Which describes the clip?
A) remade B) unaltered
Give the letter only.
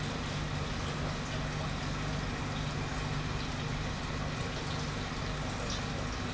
B